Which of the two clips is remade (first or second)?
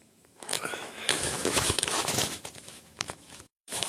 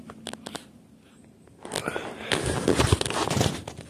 first